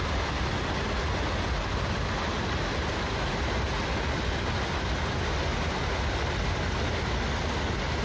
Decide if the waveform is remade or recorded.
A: recorded